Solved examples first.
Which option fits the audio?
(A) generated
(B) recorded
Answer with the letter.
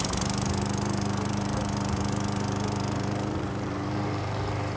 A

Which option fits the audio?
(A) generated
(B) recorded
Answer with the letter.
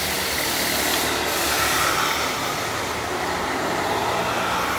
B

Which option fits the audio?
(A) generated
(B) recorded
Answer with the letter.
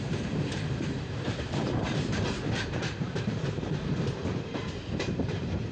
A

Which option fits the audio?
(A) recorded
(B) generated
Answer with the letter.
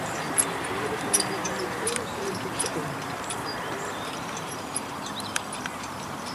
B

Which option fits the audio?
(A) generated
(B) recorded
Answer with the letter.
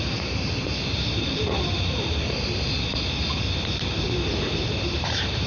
A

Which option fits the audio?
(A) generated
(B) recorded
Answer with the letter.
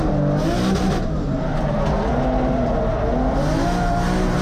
B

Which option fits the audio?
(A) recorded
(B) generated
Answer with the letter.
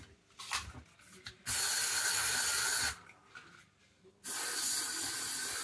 A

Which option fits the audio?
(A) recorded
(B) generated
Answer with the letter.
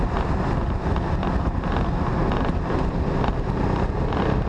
A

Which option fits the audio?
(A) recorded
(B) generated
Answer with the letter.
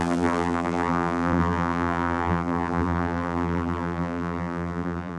B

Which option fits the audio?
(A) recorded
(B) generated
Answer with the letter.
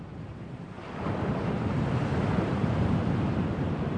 B